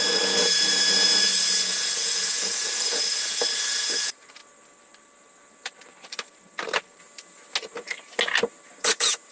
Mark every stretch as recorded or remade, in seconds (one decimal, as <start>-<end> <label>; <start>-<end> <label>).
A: 0.0-4.4 remade; 4.4-8.8 recorded; 8.8-9.3 remade